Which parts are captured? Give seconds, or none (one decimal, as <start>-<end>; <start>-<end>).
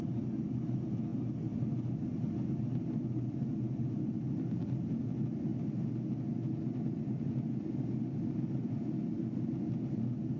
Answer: 0.0-10.4